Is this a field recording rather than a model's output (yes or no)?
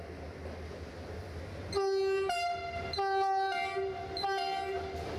yes